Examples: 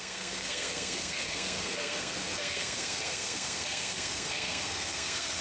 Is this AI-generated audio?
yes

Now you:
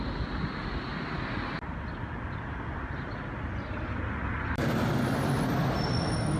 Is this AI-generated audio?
no